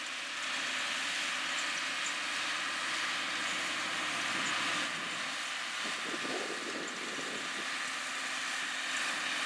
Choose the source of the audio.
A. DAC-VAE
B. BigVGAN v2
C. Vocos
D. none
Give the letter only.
D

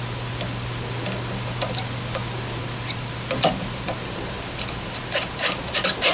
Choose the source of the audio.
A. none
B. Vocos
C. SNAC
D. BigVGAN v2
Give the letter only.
D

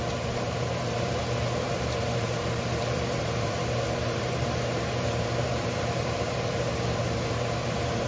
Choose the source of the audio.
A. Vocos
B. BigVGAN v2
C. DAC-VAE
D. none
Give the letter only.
B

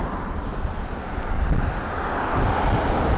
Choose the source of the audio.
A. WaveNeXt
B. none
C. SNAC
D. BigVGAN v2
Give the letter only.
B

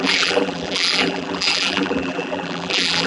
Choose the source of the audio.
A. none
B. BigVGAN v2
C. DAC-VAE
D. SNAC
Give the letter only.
B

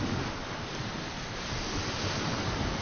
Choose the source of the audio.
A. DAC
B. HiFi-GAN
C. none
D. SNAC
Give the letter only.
C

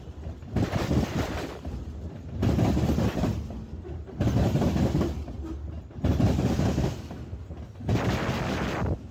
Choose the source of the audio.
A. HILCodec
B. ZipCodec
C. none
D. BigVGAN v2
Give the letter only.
C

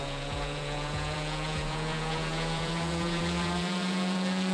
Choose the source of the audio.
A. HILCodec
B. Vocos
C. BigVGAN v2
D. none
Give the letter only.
B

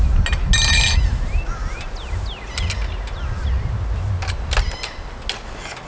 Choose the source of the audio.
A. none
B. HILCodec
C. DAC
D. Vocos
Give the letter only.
A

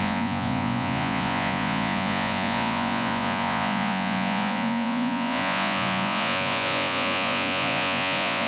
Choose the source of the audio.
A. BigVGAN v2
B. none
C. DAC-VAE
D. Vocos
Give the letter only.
D